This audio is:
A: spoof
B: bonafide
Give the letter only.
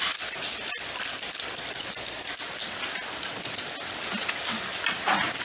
B